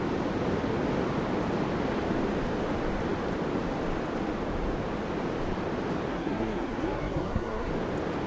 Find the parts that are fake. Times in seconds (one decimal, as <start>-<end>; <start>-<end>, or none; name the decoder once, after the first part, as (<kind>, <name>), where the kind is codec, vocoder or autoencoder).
6.1-7.7 (codec, SNAC)